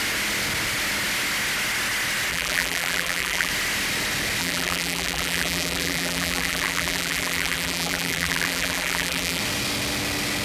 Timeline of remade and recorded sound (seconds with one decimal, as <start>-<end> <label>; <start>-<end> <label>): 0.0-2.3 recorded; 2.3-3.5 remade; 3.5-4.4 recorded; 4.4-9.4 remade; 9.4-10.4 recorded